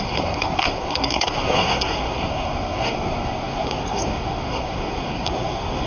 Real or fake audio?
fake